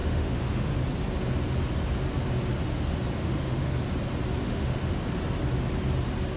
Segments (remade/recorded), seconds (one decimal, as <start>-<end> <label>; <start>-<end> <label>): 0.0-0.7 remade; 0.7-3.2 recorded; 3.2-3.7 remade; 3.7-4.4 recorded; 4.4-5.0 remade; 5.0-6.4 recorded